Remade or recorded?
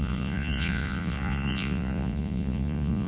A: remade